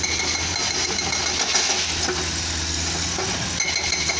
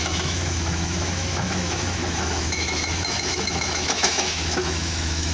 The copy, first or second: second